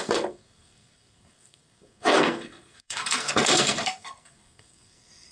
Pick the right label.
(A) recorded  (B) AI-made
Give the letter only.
B